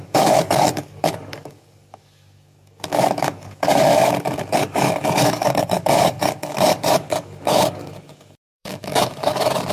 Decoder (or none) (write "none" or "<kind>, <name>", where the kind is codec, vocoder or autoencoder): codec, DAC